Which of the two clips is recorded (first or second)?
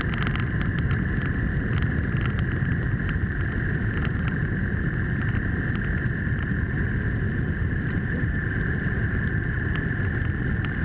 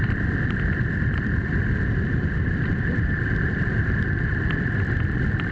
first